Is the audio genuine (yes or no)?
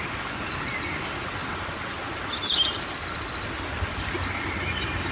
yes